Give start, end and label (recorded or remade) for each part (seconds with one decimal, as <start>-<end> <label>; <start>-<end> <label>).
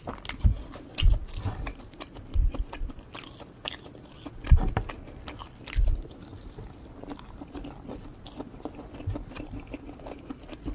0.0-10.7 recorded